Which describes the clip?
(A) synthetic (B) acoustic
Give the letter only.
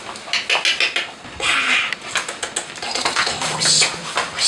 B